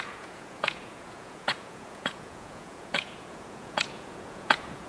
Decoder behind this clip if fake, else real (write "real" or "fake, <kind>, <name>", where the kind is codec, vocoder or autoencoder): fake, vocoder, Vocos